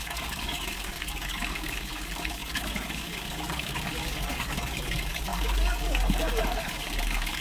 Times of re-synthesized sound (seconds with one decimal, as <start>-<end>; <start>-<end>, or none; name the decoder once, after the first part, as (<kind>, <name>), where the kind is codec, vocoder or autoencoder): 0.0-7.4 (codec, DAC)

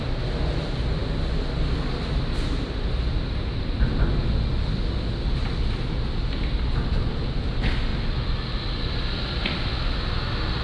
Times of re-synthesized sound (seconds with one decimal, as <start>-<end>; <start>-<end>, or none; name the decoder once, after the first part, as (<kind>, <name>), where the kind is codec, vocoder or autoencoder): none

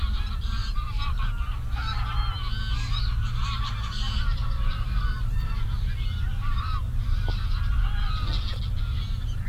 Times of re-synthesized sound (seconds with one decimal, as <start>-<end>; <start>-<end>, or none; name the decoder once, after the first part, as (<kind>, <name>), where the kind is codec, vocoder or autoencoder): 0.6-1.4 (vocoder, BigVGAN v2); 3.2-7.0

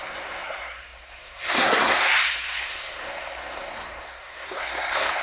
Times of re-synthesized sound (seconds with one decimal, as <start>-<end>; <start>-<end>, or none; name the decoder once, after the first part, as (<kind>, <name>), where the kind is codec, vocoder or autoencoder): 0.0-5.2 (codec, SNAC)

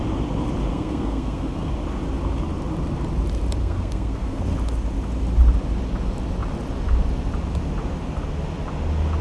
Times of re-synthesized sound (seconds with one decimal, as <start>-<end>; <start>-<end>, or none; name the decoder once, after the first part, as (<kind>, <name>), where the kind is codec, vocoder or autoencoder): 0.7-1.7 (codec, SNAC); 3.6-4.4

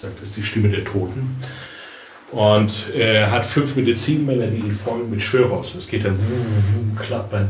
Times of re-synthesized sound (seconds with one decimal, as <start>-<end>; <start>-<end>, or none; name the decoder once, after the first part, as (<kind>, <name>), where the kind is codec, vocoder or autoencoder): 4.2-5.1 (codec, DAC)